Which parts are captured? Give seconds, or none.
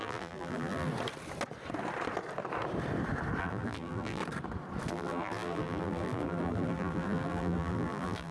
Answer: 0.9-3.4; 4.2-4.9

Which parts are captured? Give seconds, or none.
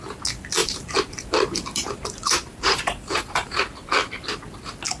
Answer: 0.0-0.6; 3.6-5.0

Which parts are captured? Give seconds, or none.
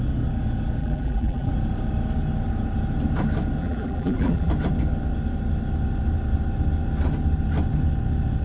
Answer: 0.0-0.8; 1.5-3.6; 4.5-8.4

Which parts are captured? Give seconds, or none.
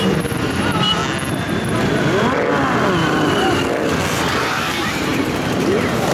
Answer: 1.0-4.3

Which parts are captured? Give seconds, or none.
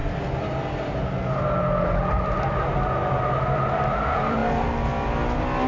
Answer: 0.0-3.4; 4.4-5.7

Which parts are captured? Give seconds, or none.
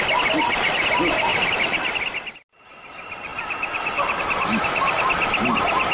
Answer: 0.0-1.3; 2.3-3.3; 4.2-5.9